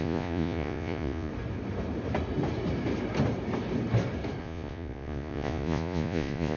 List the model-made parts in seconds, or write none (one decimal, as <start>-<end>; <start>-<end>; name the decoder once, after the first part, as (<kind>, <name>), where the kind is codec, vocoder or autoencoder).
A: 0.0-1.3 (vocoder, Vocos); 4.4-6.6